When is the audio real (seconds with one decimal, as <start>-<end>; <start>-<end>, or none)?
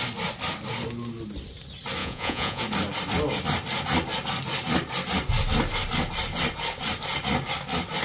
0.0-2.0; 2.6-8.0